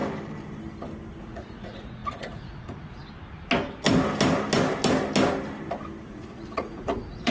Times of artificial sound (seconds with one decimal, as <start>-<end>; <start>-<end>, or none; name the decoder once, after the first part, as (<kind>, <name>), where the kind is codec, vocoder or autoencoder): 1.2-3.0 (vocoder, Vocos); 6.0-7.3